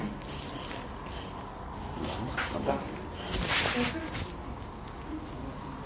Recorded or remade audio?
recorded